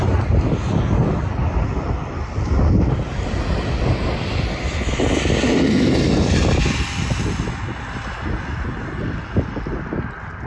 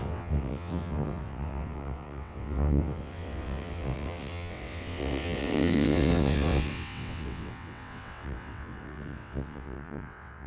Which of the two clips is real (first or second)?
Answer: first